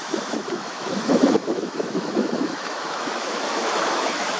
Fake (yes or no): yes